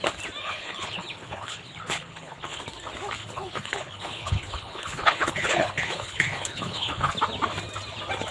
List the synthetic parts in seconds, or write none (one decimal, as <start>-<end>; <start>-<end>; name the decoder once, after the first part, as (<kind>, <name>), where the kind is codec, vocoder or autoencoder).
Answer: 0.4-2.6 (codec, HILCodec); 3.2-7.1